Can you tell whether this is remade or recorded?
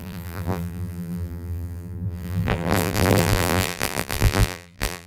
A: remade